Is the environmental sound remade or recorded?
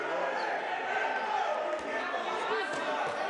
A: recorded